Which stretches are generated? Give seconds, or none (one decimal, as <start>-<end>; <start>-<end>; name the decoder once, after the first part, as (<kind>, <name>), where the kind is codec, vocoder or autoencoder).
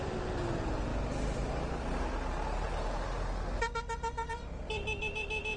none